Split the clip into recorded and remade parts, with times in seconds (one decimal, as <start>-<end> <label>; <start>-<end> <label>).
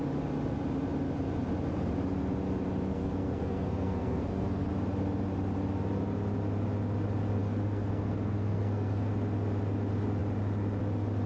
0.0-2.9 recorded; 2.9-4.7 remade; 4.7-7.4 recorded; 7.4-9.1 remade; 9.1-11.3 recorded